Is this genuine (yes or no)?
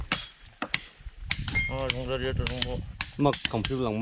yes